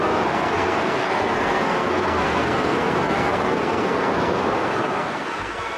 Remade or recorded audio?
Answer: remade